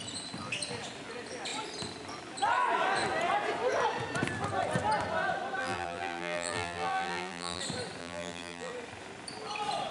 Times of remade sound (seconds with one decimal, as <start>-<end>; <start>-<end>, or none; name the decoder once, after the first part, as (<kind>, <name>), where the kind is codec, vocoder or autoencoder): 5.6-7.6 (vocoder, BigVGAN v2); 8.0-8.7

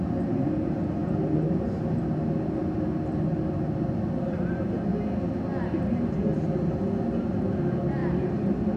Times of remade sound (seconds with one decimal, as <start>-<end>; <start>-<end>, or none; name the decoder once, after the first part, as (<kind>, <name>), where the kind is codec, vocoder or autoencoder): 0.0-4.9 (vocoder, BigVGAN v2); 5.8-6.3; 7.2-8.8

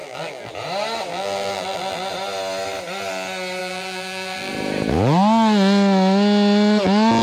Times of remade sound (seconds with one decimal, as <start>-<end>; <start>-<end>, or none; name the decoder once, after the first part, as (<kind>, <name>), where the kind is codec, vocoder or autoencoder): 0.0-0.5 (vocoder, BigVGAN v2); 1.1-2.1; 3.6-4.5